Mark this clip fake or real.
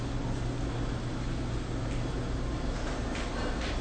real